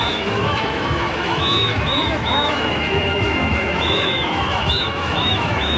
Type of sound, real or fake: fake